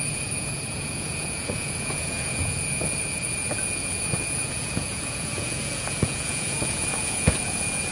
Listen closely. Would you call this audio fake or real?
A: fake